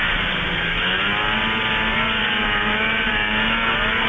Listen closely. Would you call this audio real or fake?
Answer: real